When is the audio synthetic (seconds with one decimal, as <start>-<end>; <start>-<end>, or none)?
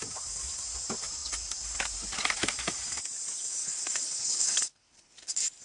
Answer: 3.6-5.6